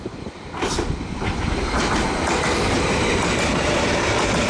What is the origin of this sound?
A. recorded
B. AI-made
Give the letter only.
A